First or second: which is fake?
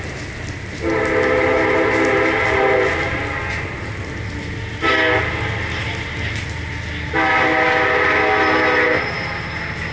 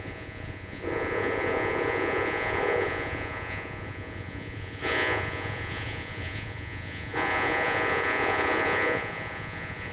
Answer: second